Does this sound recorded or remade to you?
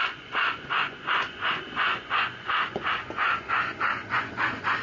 remade